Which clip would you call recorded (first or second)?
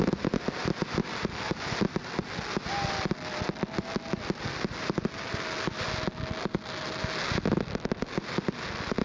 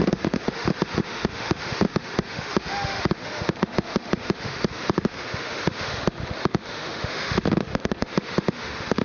first